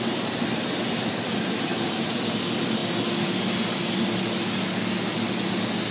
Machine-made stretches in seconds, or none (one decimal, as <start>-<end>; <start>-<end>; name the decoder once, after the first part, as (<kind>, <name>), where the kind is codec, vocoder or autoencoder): 1.7-2.4 (vocoder, BigVGAN v2)